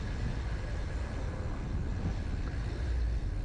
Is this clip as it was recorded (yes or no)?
yes